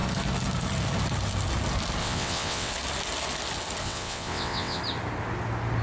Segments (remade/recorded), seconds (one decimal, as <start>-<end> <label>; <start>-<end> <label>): 0.0-2.0 recorded; 2.0-2.7 remade; 2.7-3.8 recorded; 3.8-4.8 remade; 4.8-5.8 recorded